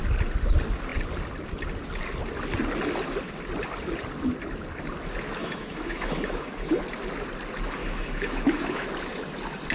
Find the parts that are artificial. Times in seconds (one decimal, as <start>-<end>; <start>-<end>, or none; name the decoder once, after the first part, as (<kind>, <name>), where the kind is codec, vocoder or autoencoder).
5.4-6.8 (autoencoder, DAC-VAE); 7.8-8.9